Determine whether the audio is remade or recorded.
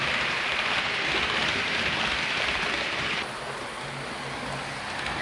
recorded